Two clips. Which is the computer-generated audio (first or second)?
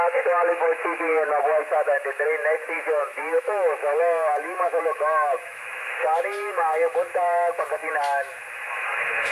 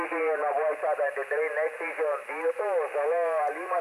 first